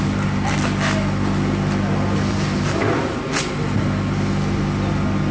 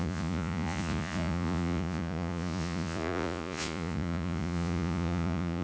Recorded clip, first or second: first